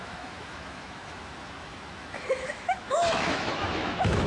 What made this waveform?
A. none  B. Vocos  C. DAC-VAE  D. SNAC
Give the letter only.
C